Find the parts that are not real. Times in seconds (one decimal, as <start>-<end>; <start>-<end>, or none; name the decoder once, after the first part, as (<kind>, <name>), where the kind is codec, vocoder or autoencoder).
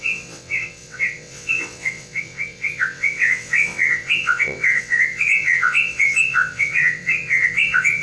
0.0-8.0 (vocoder, WaveNeXt)